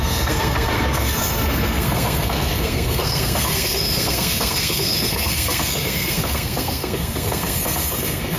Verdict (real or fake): fake